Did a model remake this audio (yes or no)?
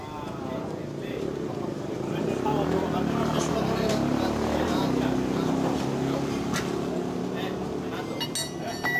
no